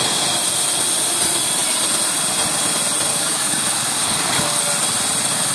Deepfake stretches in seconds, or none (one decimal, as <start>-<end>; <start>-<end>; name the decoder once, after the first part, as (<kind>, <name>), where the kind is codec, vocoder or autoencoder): 3.1-4.6 (codec, DAC)